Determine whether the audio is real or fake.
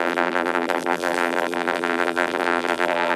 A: fake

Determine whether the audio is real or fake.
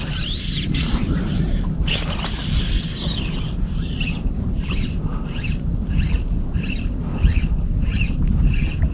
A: real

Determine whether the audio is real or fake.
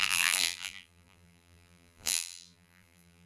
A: fake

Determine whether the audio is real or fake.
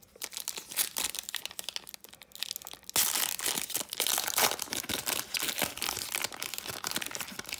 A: real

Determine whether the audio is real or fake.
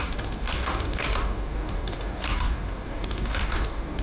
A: fake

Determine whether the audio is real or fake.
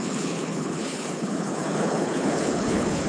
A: fake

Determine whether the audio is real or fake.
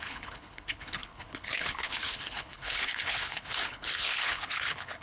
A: fake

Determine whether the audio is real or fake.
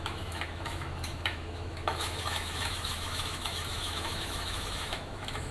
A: fake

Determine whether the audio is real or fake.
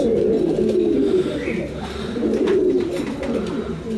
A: real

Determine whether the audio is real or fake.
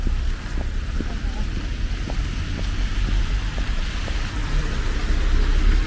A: real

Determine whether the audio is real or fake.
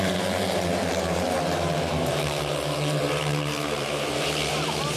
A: fake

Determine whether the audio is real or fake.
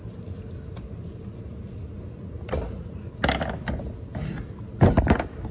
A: real